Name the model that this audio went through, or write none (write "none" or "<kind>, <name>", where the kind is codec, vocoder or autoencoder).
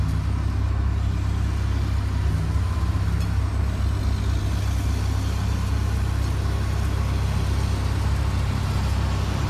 none